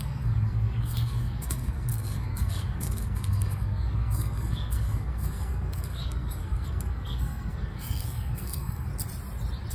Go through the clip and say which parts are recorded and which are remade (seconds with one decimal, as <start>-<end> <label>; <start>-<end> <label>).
0.0-8.9 remade; 8.9-9.7 recorded